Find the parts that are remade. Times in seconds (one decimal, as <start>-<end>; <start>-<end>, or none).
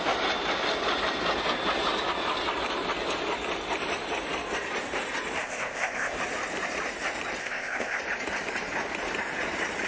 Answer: 5.4-6.1; 7.4-8.0